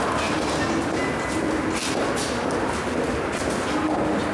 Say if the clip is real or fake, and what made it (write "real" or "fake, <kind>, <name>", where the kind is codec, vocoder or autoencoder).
real